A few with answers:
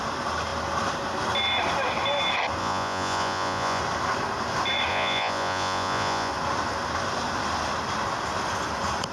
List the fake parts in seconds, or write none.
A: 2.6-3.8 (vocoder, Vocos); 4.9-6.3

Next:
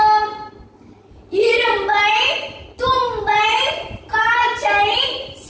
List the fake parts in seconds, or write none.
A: none

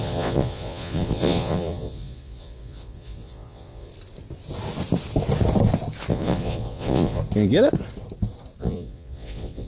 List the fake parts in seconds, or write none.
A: 0.0-3.9 (vocoder, Vocos); 6.1-7.2; 8.6-9.7

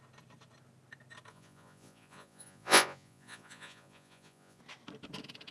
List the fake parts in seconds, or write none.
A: 1.3-4.6 (vocoder, Vocos)

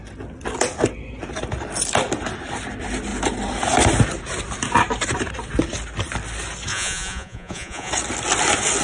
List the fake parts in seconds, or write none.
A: 6.7-7.9 (vocoder, Vocos)